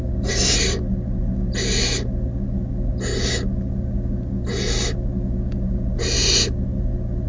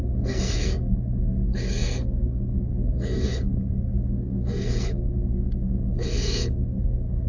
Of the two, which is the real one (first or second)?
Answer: first